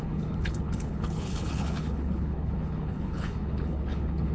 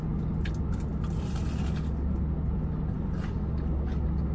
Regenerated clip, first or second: first